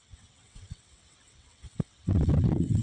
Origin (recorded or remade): remade